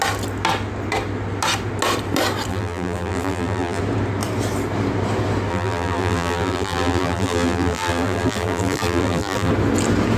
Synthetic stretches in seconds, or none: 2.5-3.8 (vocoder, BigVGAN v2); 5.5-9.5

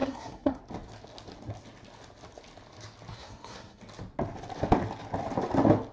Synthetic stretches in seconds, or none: 0.0-0.6 (codec, SNAC); 3.1-3.8

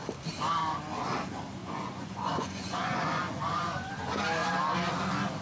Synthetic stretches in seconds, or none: 1.6-3.9 (vocoder, Vocos)

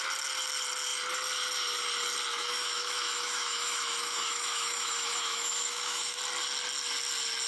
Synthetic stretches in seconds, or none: 2.3-6.2 (autoencoder, DAC-VAE)

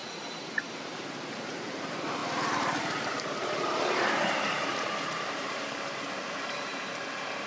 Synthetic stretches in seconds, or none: 0.6-2.2 (vocoder, BigVGAN v2); 2.8-7.5